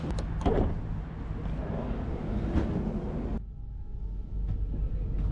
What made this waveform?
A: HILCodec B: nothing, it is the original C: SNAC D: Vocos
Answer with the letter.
B